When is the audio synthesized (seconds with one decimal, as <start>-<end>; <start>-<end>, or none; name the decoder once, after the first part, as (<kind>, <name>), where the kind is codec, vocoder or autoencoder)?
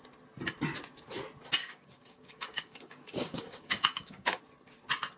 1.6-4.4 (codec, DAC)